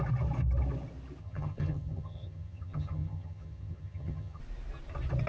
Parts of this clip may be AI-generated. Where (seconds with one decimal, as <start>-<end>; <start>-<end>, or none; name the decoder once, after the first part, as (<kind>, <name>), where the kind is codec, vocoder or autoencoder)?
1.2-4.4 (vocoder, HiFi-GAN)